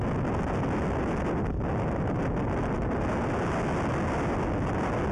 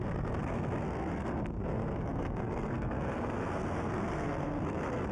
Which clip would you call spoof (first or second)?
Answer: second